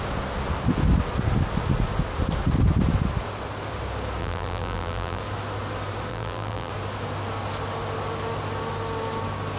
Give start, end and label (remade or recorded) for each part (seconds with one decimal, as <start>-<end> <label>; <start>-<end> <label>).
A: 0.0-4.2 recorded; 4.2-5.2 remade; 5.2-6.1 recorded; 6.1-6.7 remade; 6.7-9.6 recorded

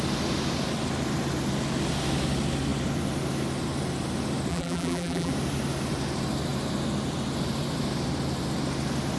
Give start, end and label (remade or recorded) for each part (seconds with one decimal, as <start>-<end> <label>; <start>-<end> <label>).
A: 0.0-4.5 recorded; 4.5-5.3 remade; 5.3-9.2 recorded

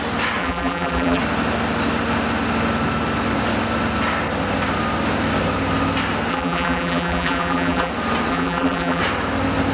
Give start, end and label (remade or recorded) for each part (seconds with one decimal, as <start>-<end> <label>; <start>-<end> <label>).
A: 0.0-0.4 recorded; 0.4-1.2 remade; 1.2-6.3 recorded; 6.3-7.9 remade; 7.9-8.3 recorded; 8.3-9.0 remade; 9.0-9.7 recorded

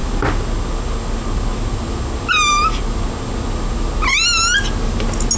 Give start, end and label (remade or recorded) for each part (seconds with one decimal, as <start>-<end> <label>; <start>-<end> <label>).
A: 0.0-5.4 recorded

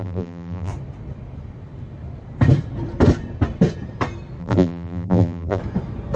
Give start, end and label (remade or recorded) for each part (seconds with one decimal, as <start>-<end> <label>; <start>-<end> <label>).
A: 0.0-0.7 remade; 0.7-4.4 recorded; 4.4-5.6 remade; 5.6-6.2 recorded

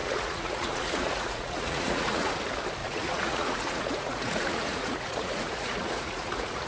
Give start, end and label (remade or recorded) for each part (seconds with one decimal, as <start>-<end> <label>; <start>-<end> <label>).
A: 0.0-2.3 remade; 2.3-2.8 recorded; 2.8-6.7 remade

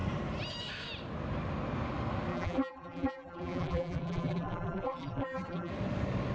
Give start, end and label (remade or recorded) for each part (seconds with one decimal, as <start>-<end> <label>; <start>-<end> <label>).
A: 0.0-2.3 recorded; 2.3-5.7 remade; 5.7-6.3 recorded

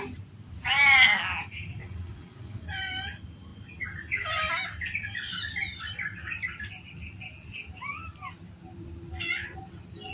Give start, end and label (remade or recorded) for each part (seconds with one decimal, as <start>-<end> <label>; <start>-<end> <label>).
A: 0.0-1.8 recorded; 1.8-2.6 remade; 2.6-10.1 recorded